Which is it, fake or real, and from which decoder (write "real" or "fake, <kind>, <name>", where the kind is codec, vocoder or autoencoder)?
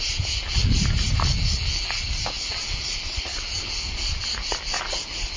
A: real